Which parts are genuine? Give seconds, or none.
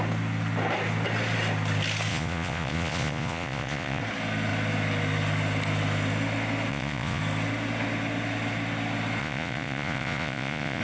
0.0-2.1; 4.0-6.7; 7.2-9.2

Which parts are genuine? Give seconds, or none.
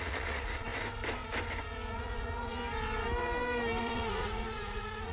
0.7-1.9; 2.6-3.8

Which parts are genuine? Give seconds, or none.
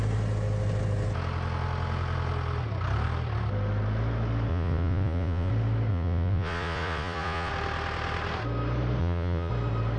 0.0-4.5; 5.5-5.9; 7.5-9.0; 9.5-10.0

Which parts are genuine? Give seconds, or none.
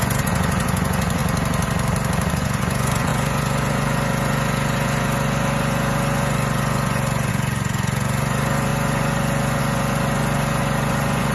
1.2-2.3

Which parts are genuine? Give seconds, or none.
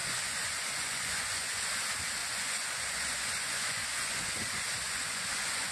1.7-2.2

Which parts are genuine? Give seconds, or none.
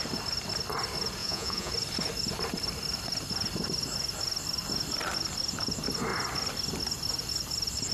0.0-1.2; 1.7-7.9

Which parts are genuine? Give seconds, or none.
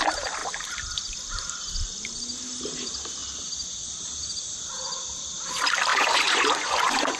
0.0-5.9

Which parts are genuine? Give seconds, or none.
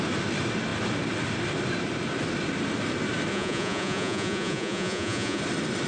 0.0-3.3; 5.4-5.9